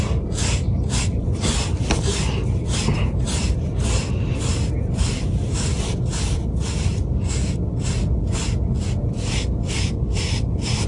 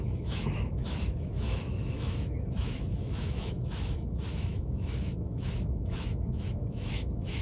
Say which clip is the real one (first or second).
first